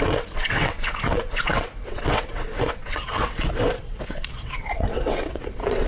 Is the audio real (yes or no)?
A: no